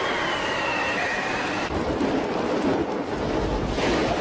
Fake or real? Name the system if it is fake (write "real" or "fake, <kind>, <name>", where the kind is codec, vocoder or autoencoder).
real